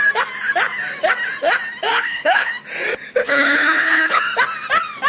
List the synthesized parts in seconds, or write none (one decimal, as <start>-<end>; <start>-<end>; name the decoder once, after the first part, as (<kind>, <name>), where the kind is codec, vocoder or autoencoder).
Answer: 1.9-2.5 (codec, HILCodec); 3.2-4.2